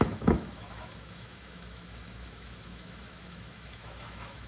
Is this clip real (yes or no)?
no